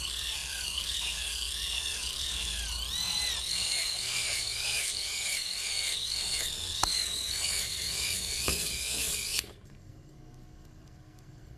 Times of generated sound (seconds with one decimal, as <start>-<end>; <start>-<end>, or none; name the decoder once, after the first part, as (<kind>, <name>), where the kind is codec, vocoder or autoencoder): 0.0-2.6 (codec, SNAC); 3.4-11.6

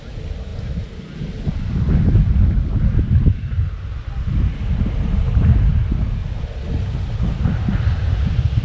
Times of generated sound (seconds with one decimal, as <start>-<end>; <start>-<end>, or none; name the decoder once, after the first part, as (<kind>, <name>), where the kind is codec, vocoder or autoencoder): none

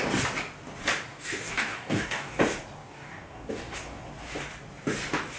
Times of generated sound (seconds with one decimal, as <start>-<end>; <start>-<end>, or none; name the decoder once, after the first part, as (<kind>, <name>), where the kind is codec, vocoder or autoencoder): 1.1-2.4 (codec, DAC); 2.8-4.0

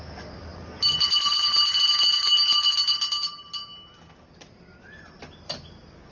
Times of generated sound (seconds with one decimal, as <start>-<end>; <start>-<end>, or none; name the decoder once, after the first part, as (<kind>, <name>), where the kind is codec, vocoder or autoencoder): none

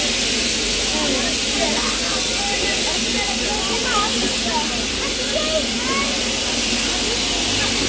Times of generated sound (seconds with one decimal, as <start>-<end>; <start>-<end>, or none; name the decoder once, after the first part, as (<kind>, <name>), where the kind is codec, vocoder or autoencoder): none

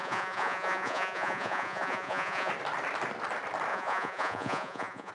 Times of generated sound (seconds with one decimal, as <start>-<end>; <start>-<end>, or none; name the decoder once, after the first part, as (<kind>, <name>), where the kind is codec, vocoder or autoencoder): 0.0-2.5 (vocoder, Vocos); 3.7-5.1

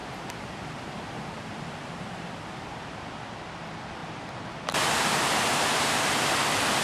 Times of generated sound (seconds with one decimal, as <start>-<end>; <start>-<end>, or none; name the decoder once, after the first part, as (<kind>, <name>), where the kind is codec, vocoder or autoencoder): 0.0-6.8 (vocoder, BigVGAN v2)

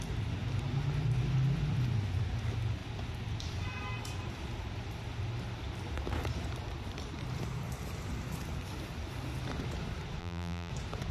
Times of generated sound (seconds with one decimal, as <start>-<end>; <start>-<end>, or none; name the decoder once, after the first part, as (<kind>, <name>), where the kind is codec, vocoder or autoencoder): 10.2-10.7 (vocoder, BigVGAN v2)